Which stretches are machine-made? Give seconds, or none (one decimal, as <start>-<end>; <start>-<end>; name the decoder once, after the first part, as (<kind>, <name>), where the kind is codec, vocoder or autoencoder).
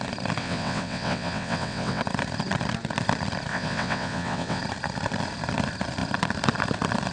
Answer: 0.4-2.0 (vocoder, WaveNeXt); 3.5-4.6